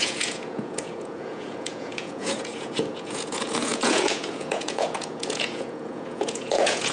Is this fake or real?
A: fake